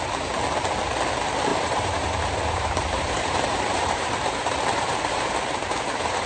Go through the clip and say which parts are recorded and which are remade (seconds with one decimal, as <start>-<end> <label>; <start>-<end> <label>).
0.0-1.5 recorded; 1.5-5.3 remade; 5.3-6.3 recorded